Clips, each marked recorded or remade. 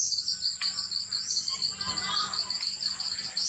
recorded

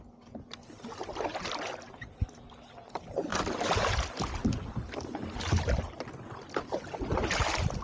recorded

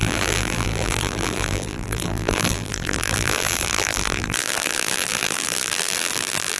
remade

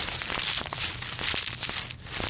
remade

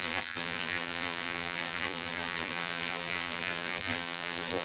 remade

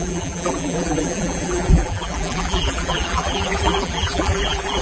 remade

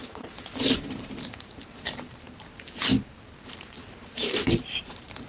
remade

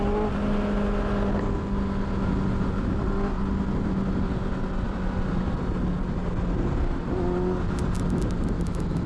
recorded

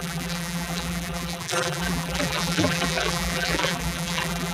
remade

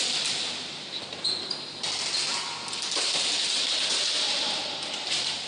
recorded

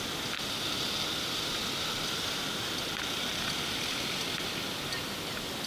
recorded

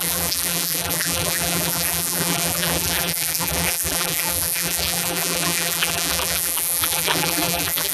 remade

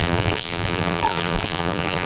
remade